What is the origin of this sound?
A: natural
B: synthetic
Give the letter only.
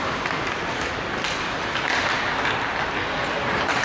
A